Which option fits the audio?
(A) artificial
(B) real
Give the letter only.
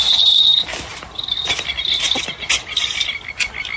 B